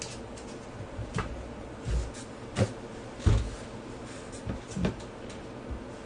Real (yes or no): yes